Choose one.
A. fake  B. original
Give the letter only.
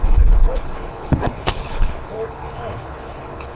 A